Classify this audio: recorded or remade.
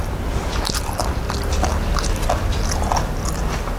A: recorded